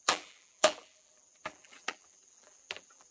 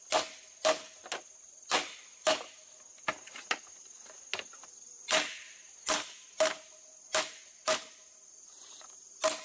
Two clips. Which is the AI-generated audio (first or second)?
first